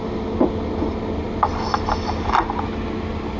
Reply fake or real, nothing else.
real